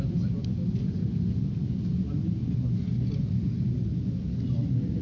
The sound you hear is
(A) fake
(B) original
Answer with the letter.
B